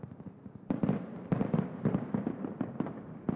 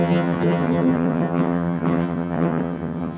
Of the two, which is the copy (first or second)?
second